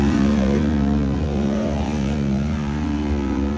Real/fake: fake